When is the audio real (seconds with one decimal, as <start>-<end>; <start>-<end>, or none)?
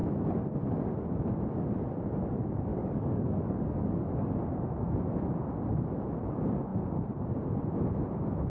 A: 0.0-2.7; 4.3-8.5